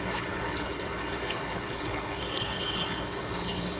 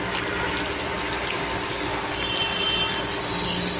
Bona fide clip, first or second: second